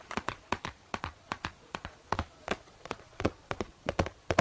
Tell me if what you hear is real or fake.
fake